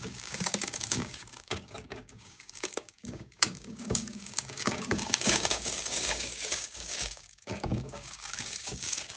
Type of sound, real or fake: fake